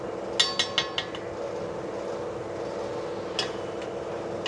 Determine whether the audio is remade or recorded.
recorded